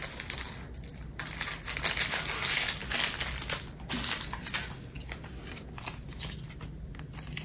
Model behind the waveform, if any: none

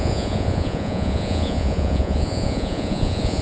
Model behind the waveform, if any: vocoder, Vocos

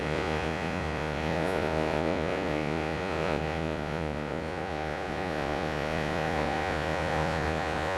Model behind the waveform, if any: vocoder, Vocos